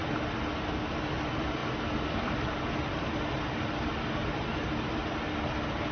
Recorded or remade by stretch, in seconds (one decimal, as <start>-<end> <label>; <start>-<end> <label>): 0.0-5.9 recorded